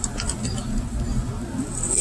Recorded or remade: recorded